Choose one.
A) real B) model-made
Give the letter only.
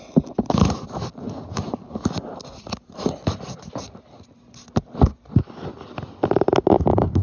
A